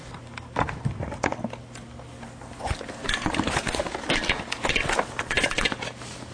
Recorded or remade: recorded